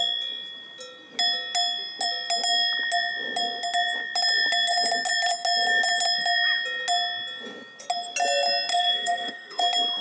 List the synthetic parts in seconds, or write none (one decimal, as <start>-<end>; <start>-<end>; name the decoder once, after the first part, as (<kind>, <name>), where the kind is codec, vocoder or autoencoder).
8.7-9.6 (codec, SNAC)